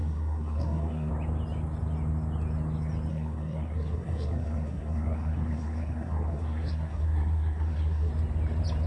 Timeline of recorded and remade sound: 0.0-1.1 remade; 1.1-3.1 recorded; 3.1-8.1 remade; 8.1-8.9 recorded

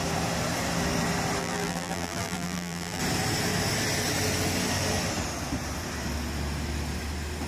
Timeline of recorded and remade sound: 0.0-1.4 recorded; 1.4-3.0 remade; 3.0-7.5 recorded

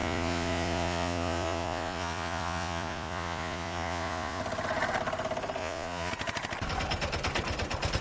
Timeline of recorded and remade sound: 0.0-4.4 remade; 4.4-5.6 recorded; 5.6-6.1 remade; 6.1-8.0 recorded

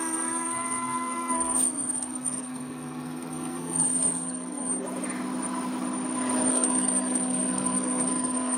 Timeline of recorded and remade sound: 0.0-4.7 remade; 4.7-6.5 recorded; 6.5-8.6 remade